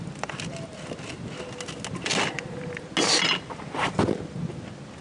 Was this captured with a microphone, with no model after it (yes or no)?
yes